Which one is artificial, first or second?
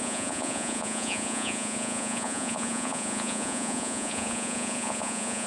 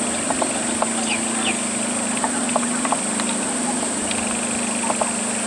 first